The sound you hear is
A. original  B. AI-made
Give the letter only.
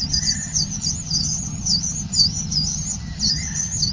B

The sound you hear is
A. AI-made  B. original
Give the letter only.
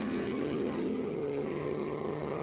A